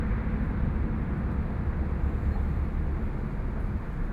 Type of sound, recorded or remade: recorded